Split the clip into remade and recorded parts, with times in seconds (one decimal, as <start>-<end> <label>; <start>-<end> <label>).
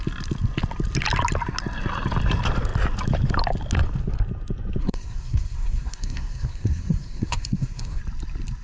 0.0-4.8 recorded; 4.8-8.0 remade; 8.0-8.6 recorded